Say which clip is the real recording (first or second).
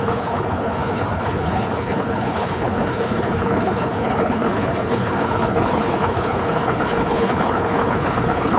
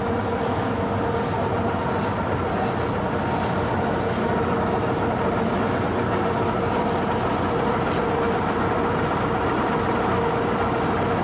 second